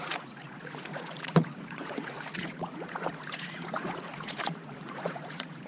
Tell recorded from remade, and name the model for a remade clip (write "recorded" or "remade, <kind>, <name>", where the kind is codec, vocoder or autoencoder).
remade, vocoder, Vocos